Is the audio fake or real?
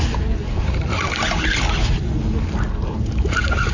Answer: real